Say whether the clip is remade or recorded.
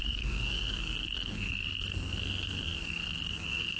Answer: remade